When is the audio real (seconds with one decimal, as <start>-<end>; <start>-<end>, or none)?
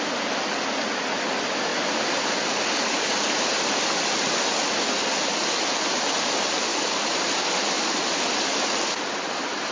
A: 0.0-9.7